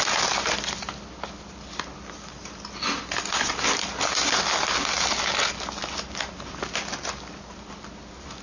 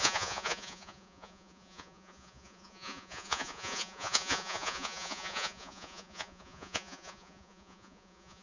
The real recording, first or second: first